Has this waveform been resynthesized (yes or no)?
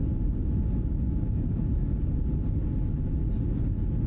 no